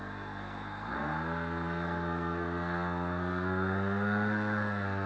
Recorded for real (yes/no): no